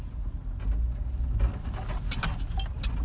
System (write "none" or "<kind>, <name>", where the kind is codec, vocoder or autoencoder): none